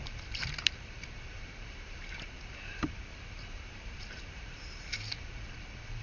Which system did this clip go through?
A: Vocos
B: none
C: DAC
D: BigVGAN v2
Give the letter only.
D